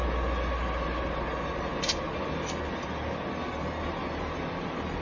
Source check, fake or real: real